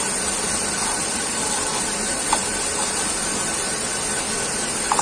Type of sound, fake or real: real